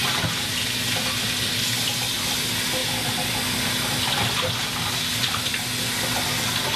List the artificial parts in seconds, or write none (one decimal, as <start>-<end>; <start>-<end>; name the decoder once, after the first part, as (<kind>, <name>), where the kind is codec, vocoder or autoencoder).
none